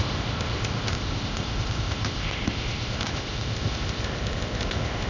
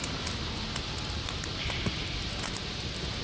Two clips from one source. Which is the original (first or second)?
second